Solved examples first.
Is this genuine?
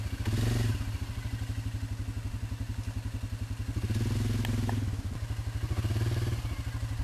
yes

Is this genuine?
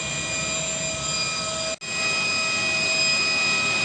yes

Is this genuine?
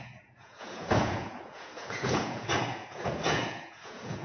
no